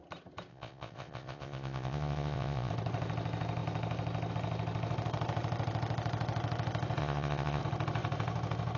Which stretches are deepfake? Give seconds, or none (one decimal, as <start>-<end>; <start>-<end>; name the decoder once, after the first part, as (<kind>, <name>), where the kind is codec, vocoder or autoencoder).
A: 0.5-2.7 (vocoder, Vocos); 7.0-7.6